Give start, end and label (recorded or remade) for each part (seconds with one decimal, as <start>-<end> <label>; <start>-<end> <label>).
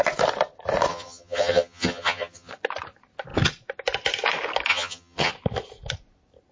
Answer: 0.0-0.9 recorded; 0.9-2.5 remade; 2.5-4.7 recorded; 4.7-5.3 remade; 5.3-6.5 recorded